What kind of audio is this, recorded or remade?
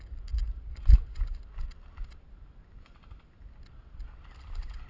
recorded